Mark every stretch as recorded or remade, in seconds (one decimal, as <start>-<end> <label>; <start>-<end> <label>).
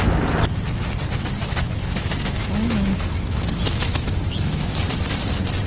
0.0-1.4 recorded; 1.4-4.8 remade; 4.8-5.7 recorded